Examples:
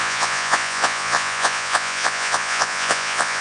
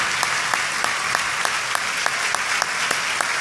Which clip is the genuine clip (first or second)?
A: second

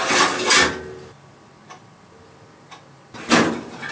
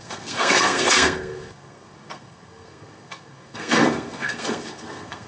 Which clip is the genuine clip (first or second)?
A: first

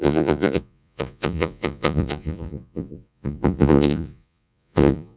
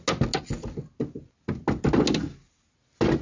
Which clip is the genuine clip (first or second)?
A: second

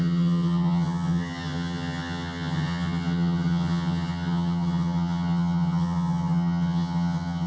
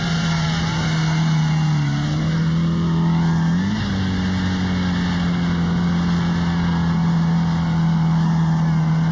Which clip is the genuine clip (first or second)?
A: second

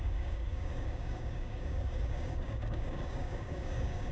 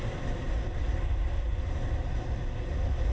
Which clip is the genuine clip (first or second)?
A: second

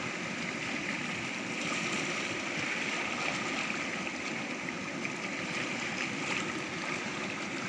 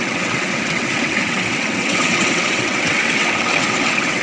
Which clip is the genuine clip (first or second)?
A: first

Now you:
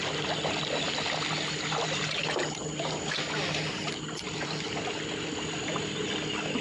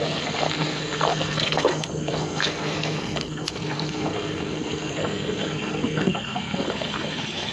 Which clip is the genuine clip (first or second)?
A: first